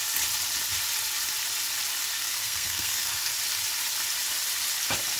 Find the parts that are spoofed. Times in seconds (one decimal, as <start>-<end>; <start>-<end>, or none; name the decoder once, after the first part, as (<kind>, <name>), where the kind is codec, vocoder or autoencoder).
2.2-3.3 (codec, SNAC)